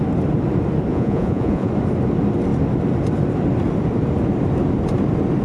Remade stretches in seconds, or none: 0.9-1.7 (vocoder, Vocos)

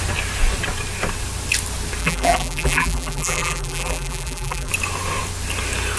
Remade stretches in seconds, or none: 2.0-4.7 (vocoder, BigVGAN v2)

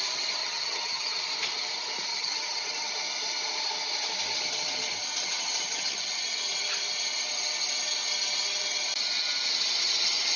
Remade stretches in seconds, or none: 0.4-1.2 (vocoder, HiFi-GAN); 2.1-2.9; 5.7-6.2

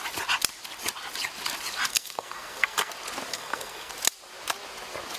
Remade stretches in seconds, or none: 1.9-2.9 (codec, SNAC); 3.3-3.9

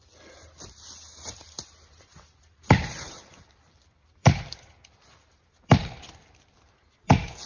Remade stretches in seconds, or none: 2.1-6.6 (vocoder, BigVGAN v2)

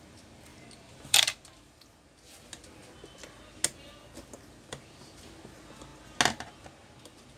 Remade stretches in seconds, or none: 0.5-1.9 (vocoder, BigVGAN v2)

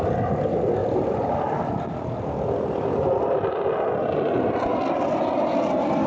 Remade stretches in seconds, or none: 0.8-2.0 (vocoder, BigVGAN v2); 4.7-5.4